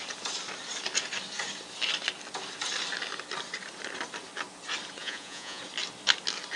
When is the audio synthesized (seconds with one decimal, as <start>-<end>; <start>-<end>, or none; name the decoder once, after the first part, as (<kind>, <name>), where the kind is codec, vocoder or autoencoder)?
5.0-5.6 (vocoder, Vocos)